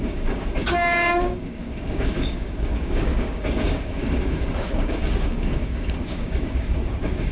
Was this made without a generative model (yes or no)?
no